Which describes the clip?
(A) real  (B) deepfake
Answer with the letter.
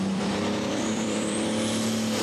B